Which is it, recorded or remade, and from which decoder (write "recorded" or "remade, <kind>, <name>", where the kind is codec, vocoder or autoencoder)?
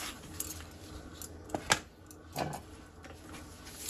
recorded